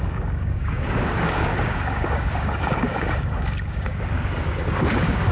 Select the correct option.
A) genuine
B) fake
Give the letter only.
B